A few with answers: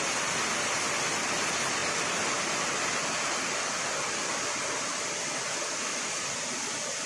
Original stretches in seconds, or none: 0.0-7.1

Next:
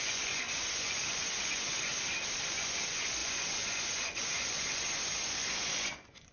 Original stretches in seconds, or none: 1.9-2.5

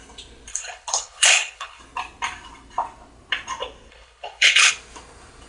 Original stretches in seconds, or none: 0.0-0.5; 1.8-3.9; 4.7-5.5

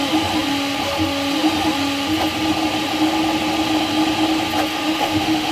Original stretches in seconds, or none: 0.0-4.7

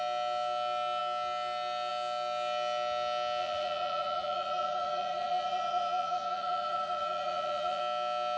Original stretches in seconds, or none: 0.0-3.4; 7.8-8.4